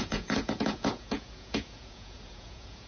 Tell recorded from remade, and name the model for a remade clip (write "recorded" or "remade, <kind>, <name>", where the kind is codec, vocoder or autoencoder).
remade, vocoder, Vocos